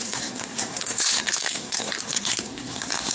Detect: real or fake fake